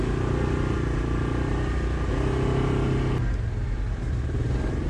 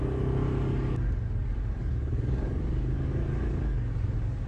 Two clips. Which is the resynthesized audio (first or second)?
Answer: second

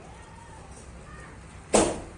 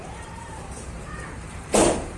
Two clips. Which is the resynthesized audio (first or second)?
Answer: second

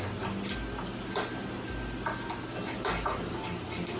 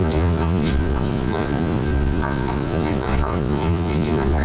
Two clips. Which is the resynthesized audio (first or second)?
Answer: second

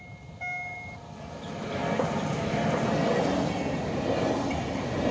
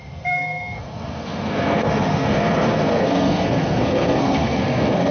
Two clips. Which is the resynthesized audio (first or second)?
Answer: second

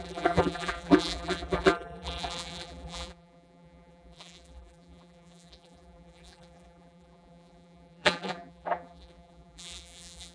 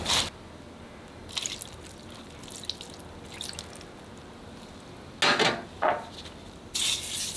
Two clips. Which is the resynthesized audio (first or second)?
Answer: first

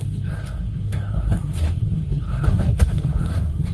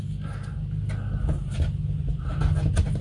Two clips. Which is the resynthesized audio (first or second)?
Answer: first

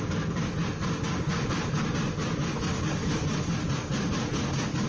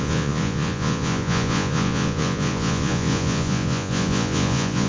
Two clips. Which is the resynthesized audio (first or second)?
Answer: second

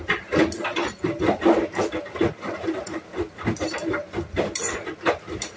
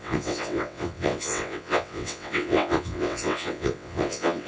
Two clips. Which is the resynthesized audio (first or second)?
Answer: second